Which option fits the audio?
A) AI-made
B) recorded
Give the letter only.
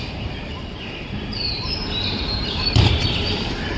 A